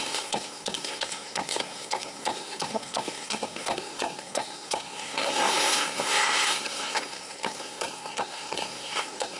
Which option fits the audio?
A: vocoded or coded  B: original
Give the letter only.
A